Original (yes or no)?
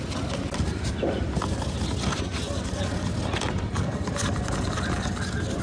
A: yes